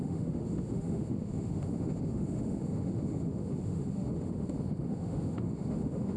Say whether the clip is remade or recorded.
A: remade